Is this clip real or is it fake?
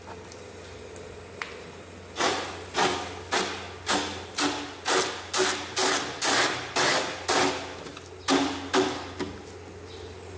real